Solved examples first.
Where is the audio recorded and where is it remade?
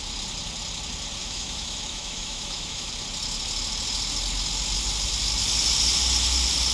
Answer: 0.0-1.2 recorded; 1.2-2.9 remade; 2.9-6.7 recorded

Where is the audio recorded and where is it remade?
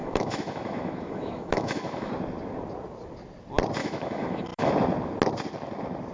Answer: 0.0-2.1 remade; 2.1-3.8 recorded; 3.8-4.7 remade; 4.7-6.1 recorded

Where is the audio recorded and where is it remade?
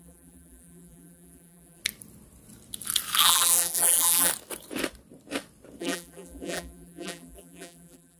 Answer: 0.0-1.8 remade; 1.8-3.2 recorded; 3.2-4.3 remade; 4.3-5.8 recorded; 5.8-8.2 remade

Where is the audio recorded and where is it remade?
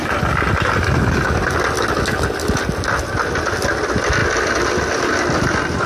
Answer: 0.0-3.4 recorded; 3.4-4.2 remade; 4.2-5.2 recorded; 5.2-5.9 remade